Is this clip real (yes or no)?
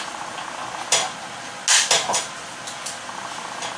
yes